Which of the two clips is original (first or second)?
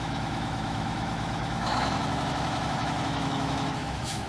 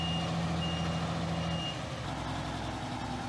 second